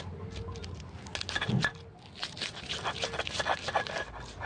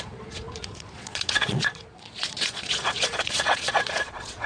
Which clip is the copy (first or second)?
second